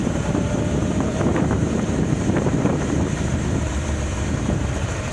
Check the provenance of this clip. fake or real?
fake